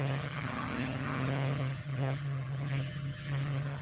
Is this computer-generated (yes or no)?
yes